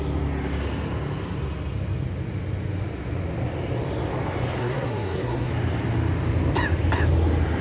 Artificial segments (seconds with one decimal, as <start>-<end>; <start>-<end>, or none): 4.6-5.5